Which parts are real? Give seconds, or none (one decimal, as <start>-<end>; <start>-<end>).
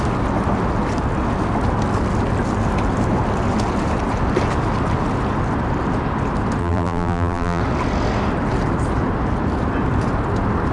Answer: 0.0-6.6; 7.6-10.7